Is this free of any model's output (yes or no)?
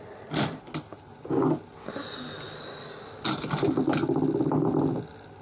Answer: yes